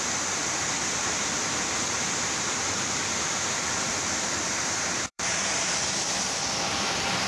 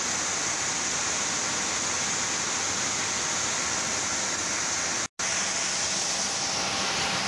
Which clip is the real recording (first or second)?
second